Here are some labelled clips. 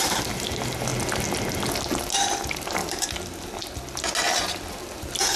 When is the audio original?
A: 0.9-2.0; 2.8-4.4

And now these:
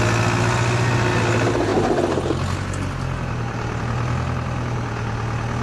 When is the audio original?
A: 0.0-5.6

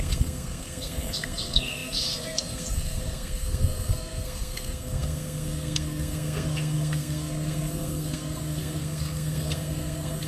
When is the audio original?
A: none